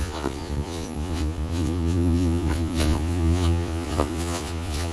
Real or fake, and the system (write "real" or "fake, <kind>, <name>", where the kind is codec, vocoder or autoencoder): fake, vocoder, Vocos